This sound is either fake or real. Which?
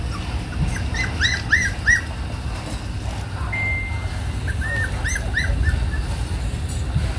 real